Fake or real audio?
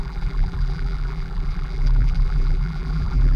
fake